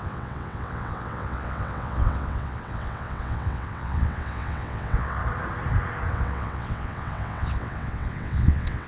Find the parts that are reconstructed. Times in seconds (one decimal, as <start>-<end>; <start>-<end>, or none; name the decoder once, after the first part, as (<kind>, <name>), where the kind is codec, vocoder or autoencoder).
0.0-5.2 (vocoder, WaveNeXt); 6.1-8.9